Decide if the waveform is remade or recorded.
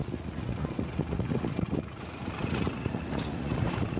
remade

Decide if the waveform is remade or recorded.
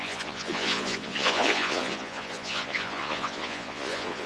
remade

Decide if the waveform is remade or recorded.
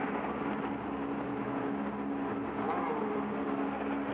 recorded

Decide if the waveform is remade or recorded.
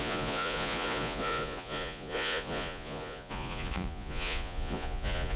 remade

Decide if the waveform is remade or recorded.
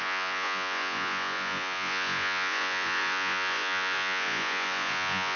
remade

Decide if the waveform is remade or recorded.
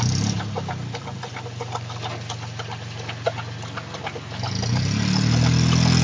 recorded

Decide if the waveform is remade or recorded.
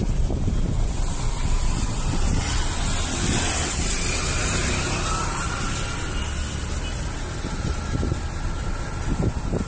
recorded